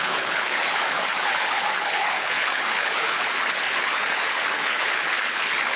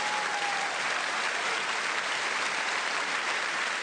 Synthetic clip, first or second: first